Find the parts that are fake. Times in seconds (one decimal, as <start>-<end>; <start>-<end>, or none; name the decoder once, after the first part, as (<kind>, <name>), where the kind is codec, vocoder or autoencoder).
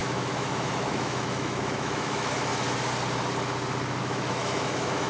0.0-2.5 (autoencoder, DAC-VAE); 4.0-5.1